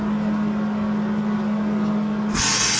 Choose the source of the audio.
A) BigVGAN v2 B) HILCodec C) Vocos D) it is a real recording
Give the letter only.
D